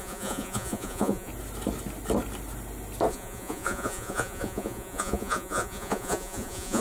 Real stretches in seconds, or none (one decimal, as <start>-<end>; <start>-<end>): 1.3-3.1